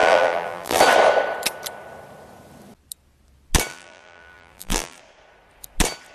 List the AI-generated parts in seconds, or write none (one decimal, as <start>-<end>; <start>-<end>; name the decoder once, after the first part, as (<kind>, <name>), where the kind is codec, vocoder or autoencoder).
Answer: 0.0-0.8 (vocoder, BigVGAN v2); 3.7-5.0